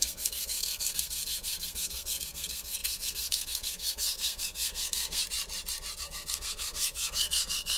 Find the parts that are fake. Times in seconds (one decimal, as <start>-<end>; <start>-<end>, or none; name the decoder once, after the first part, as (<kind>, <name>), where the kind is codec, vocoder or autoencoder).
0.0-5.2 (codec, SNAC); 6.0-7.8